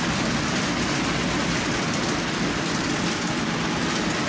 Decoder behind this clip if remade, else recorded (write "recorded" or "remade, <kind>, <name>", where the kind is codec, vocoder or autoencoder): recorded